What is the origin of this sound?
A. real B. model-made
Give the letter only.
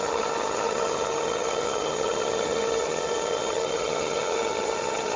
B